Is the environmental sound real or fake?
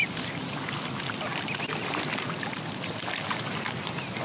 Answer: real